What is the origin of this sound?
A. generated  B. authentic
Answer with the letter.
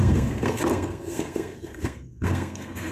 A